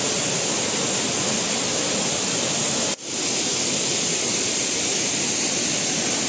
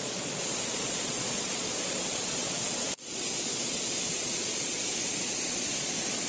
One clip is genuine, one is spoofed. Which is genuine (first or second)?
first